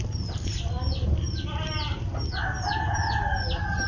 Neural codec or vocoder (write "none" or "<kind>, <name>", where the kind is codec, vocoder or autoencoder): none